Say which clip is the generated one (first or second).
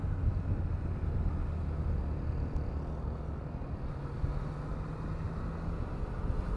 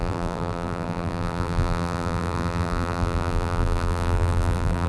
second